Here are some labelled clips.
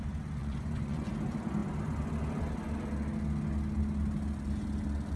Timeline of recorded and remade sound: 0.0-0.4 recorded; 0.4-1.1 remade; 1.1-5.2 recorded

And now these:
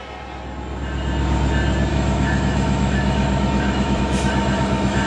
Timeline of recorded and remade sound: 0.0-1.9 recorded; 1.9-5.1 remade

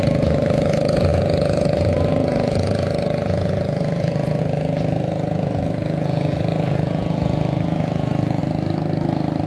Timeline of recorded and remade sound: 0.0-8.4 remade; 8.4-9.5 recorded

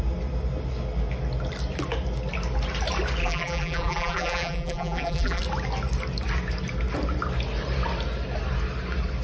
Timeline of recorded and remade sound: 0.0-3.2 recorded; 3.2-5.4 remade; 5.4-9.2 recorded

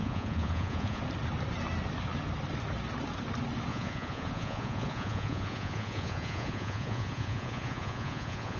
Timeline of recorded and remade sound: 0.0-1.0 remade; 1.0-3.7 recorded; 3.7-8.6 remade